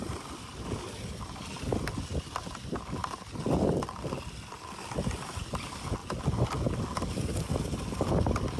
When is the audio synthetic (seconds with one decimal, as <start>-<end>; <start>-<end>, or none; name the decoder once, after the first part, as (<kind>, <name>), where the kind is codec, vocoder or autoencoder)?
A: none